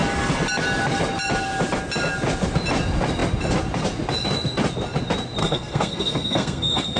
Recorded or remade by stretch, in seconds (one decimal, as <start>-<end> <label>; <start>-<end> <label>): 0.0-5.4 recorded; 5.4-7.0 remade